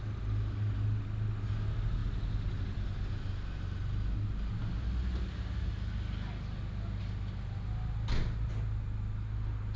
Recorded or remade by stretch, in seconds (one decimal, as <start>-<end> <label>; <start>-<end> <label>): 0.0-9.8 recorded